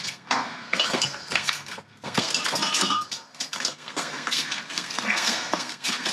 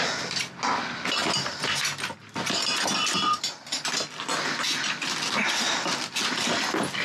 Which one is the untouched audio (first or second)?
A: second